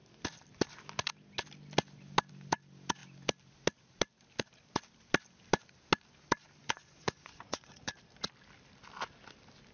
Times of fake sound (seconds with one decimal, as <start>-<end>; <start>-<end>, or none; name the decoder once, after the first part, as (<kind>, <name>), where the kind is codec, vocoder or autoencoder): 6.6-7.9 (vocoder, Vocos)